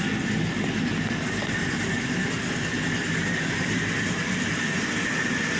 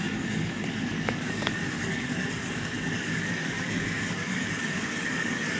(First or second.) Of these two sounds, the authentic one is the first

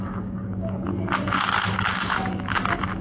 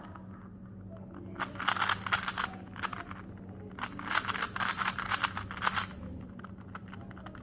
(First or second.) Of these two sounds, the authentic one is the second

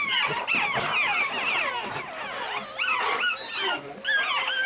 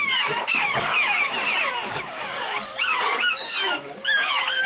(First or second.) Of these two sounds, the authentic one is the first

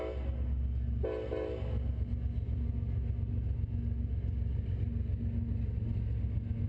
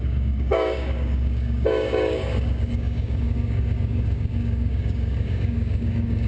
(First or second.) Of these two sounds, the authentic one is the first